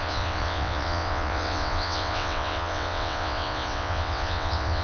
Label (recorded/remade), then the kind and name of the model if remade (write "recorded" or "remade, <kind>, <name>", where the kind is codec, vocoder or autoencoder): remade, vocoder, WaveNeXt